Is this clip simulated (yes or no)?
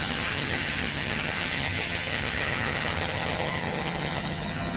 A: yes